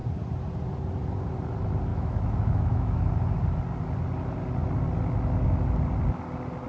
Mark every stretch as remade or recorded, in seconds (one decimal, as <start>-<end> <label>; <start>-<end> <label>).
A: 0.0-1.9 recorded; 1.9-3.1 remade; 3.1-6.7 recorded